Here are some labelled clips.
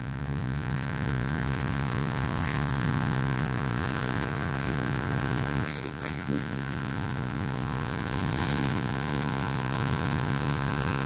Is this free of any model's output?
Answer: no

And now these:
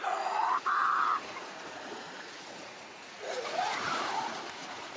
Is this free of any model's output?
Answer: no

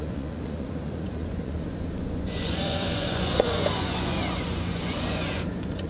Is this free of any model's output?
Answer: no